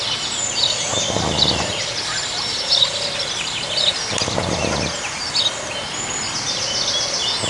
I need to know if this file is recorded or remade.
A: recorded